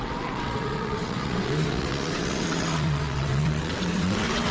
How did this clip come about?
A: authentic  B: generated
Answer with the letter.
B